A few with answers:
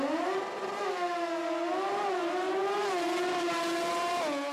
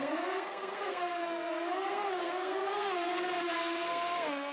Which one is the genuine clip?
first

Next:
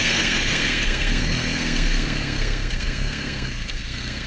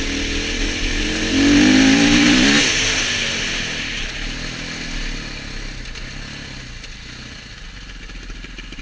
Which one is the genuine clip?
second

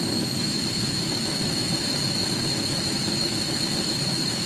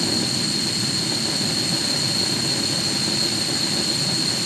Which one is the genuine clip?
second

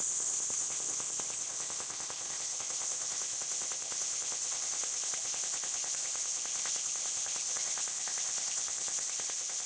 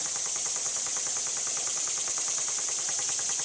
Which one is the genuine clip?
second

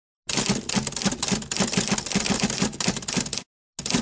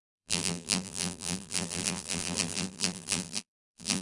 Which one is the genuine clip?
first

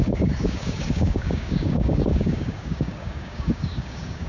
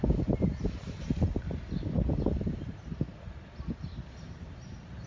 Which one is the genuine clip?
second